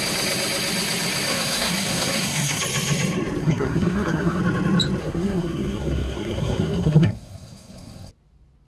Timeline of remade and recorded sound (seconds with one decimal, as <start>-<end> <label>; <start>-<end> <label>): 0.0-1.3 recorded; 1.3-2.6 remade; 2.6-3.4 recorded; 3.4-4.4 remade; 4.4-5.0 recorded; 5.0-8.1 remade; 8.1-8.7 recorded